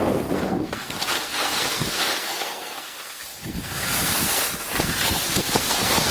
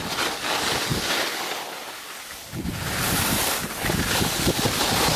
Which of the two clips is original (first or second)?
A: second